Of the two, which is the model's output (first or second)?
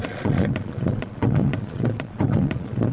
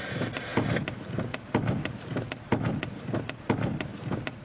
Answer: first